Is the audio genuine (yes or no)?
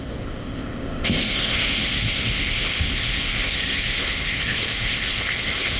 no